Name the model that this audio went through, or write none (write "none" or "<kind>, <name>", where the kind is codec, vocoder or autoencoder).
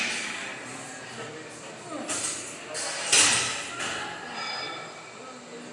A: none